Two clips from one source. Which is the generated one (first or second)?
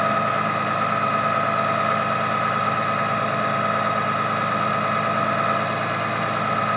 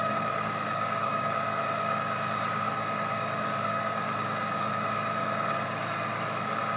second